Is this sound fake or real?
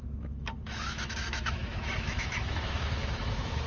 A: fake